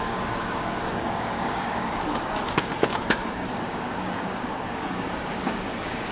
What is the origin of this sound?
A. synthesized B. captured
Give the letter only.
A